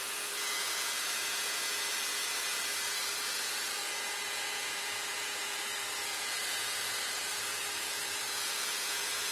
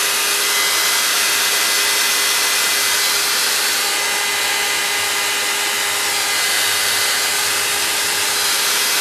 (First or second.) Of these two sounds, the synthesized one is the first